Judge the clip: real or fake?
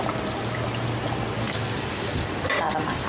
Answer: real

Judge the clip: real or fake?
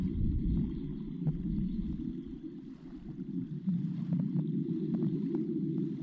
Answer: real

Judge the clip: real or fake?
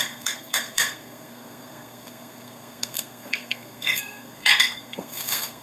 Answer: fake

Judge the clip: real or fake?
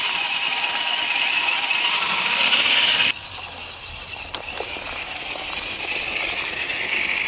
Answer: real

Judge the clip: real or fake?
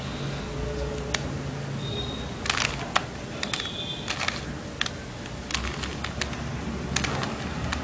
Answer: real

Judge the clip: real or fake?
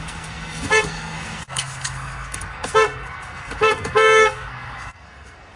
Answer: fake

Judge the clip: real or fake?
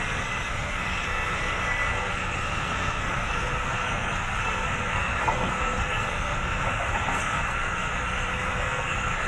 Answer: fake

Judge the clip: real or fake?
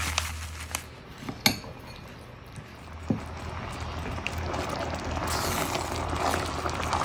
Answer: real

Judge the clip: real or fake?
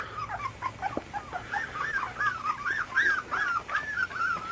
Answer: real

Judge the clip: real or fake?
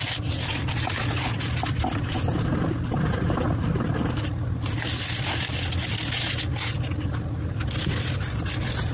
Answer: real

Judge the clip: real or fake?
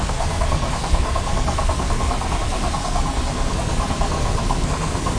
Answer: fake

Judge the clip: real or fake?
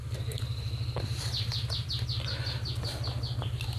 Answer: fake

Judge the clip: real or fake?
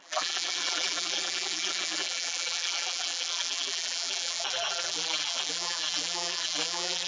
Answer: fake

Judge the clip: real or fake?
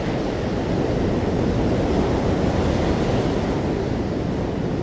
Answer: real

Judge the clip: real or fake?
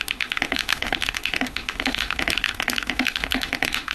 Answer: fake